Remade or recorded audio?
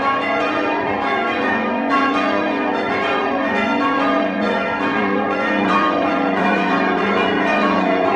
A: remade